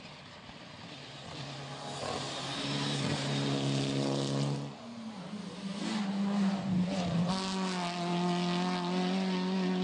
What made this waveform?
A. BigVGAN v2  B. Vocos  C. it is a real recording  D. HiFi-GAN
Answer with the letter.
C